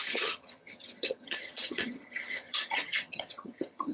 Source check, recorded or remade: remade